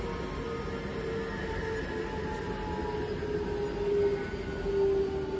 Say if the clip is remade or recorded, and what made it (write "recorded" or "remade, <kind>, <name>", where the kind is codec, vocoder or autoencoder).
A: recorded